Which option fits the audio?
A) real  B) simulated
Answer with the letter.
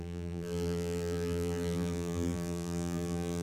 B